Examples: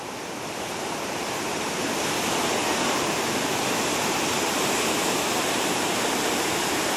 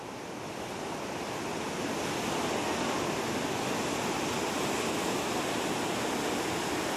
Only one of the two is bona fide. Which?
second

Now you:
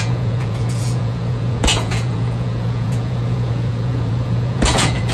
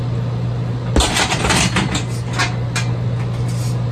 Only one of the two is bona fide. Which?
second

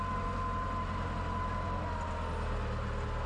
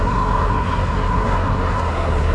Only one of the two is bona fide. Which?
first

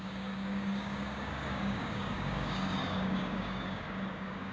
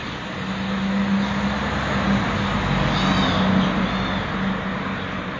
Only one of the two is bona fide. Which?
second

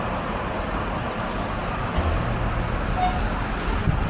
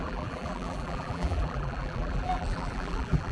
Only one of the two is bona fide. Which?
first